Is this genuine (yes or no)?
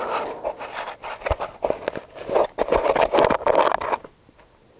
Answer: yes